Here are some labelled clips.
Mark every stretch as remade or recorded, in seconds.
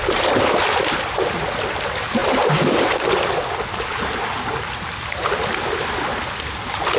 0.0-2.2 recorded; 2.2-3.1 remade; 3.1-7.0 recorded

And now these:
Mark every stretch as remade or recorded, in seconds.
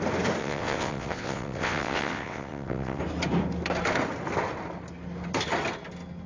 0.0-0.4 recorded; 0.4-3.0 remade; 3.0-6.3 recorded